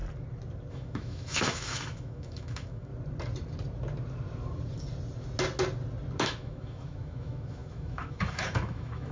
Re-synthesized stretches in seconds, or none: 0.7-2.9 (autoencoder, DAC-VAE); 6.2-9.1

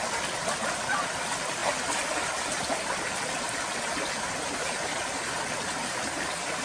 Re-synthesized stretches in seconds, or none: none

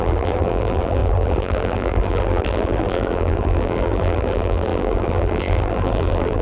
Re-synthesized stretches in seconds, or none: 0.0-6.4 (vocoder, BigVGAN v2)